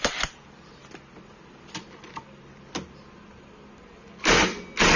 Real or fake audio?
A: real